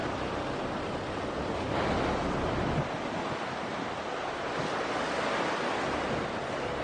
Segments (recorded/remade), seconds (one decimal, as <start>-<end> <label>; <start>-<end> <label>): 0.0-6.8 recorded